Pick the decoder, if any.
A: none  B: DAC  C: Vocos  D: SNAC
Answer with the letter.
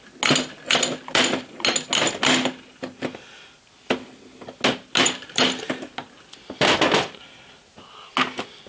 A